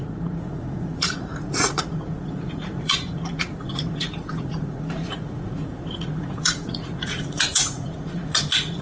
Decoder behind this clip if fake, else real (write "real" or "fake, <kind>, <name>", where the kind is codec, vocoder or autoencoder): fake, vocoder, Vocos